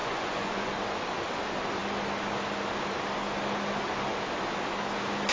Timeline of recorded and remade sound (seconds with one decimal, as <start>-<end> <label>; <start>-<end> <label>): 0.0-0.7 remade; 0.7-5.3 recorded